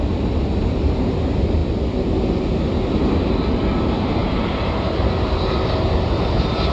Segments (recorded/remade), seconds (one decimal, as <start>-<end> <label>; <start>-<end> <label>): 0.0-4.2 recorded; 4.2-5.5 remade; 5.5-6.7 recorded